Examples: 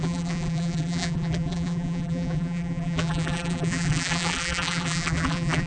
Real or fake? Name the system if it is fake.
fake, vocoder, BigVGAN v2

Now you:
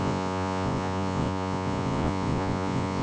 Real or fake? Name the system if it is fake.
fake, vocoder, Vocos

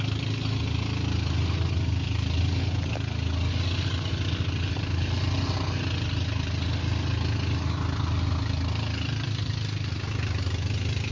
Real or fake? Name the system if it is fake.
real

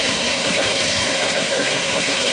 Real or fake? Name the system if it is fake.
fake, codec, SNAC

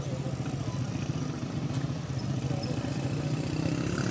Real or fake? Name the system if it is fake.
real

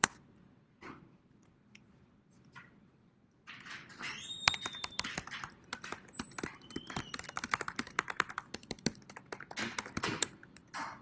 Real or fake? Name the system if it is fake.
fake, vocoder, BigVGAN v2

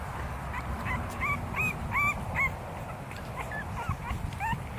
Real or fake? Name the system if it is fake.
real